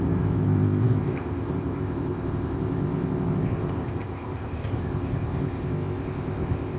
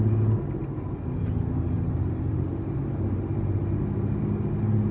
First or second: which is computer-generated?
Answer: first